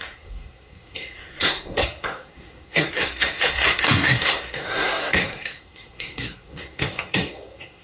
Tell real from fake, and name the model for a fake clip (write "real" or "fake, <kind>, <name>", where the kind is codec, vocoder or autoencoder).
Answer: fake, codec, SNAC